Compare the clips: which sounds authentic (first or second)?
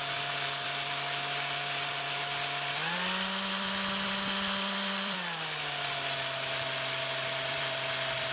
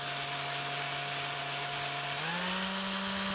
second